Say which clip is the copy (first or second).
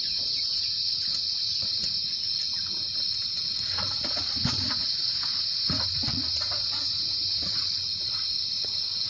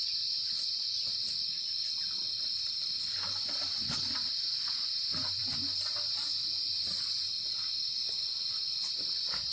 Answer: first